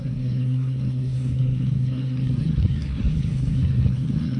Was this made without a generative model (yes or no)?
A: no